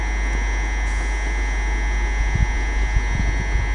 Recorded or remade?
recorded